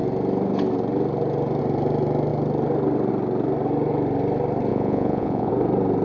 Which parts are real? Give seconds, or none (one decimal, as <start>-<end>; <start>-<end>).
0.0-4.7; 5.5-6.0